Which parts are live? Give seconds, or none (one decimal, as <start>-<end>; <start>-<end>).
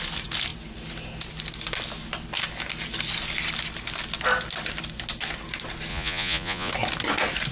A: 0.0-5.9; 6.7-7.5